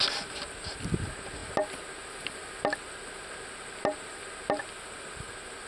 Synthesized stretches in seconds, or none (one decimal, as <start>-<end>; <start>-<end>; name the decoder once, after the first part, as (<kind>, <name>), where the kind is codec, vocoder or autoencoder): none